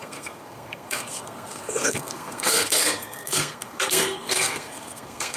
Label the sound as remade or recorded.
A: remade